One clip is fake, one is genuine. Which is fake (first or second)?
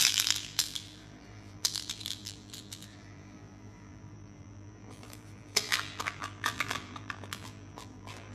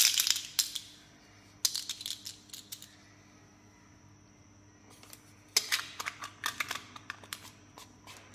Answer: first